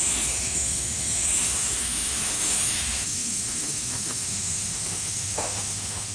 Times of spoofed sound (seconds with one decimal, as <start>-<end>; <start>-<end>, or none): 0.0-6.1